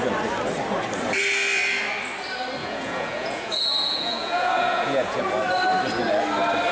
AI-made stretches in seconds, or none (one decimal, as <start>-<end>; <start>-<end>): 2.6-5.2